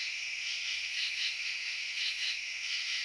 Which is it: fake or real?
fake